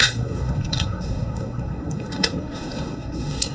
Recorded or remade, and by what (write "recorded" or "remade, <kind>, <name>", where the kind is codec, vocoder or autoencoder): remade, codec, SNAC